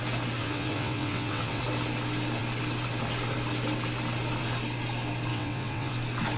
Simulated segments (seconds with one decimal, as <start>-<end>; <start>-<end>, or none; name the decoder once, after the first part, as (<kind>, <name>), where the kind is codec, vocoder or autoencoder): 0.4-1.6 (vocoder, WaveNeXt); 5.3-5.9